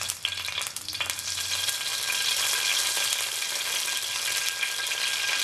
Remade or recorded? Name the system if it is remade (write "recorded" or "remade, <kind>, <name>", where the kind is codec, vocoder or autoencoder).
recorded